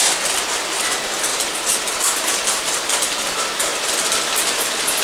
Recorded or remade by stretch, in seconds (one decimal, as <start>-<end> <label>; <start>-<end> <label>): 0.0-5.0 recorded